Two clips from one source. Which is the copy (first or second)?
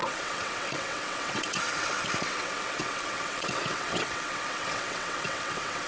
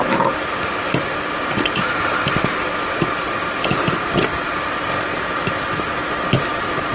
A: first